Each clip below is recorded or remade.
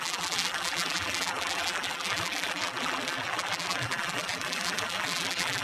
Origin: remade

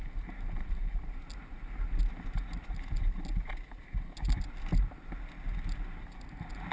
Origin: recorded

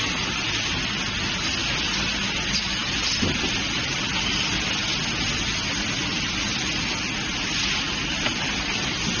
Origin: recorded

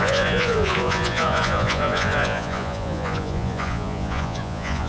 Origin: remade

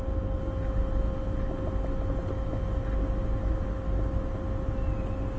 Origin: recorded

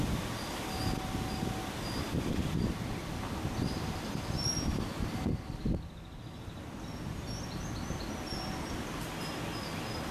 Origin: recorded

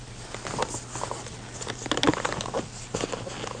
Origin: recorded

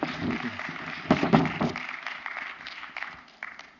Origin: recorded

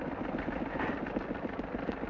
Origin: recorded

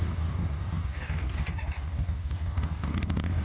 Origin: remade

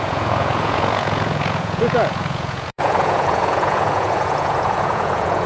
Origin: remade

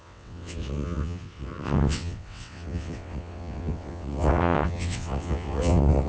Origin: remade